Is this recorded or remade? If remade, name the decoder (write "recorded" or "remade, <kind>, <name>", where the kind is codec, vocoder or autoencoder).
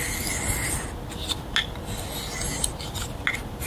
recorded